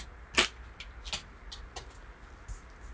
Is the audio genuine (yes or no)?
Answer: yes